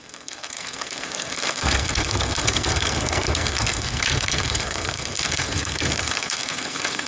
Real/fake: fake